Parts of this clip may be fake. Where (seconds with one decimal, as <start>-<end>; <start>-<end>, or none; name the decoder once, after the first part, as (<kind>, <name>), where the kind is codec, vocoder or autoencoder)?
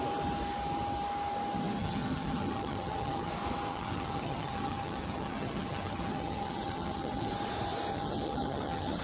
1.8-3.3 (vocoder, HiFi-GAN); 3.7-7.3; 7.9-9.0